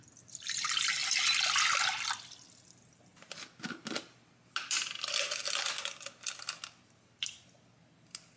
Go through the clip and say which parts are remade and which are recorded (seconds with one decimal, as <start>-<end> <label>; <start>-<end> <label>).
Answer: 0.0-8.4 recorded